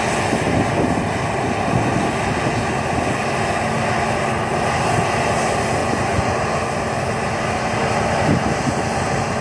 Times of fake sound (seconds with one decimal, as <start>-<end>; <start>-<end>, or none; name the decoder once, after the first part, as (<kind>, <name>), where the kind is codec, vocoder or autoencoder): 5.8-6.3 (vocoder, Vocos)